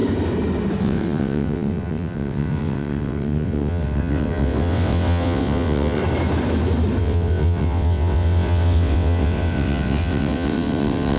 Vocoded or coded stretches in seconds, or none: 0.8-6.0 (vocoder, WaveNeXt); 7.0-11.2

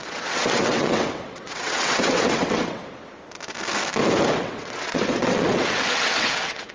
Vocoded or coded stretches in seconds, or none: 0.0-2.8 (vocoder, WaveNeXt); 4.3-6.7

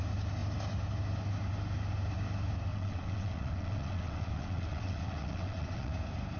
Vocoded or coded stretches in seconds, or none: 2.7-5.9 (vocoder, WaveNeXt)

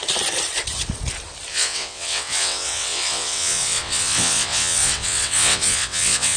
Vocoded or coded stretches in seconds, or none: 1.5-6.4 (vocoder, WaveNeXt)

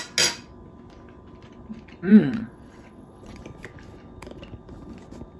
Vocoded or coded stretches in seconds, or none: 2.1-3.4 (vocoder, WaveNeXt)

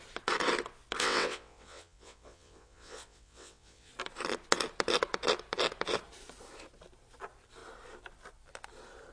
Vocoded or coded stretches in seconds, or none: 1.0-3.9 (vocoder, WaveNeXt)

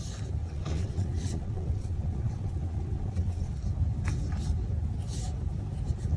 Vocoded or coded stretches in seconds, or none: 0.4-3.5 (vocoder, WaveNeXt)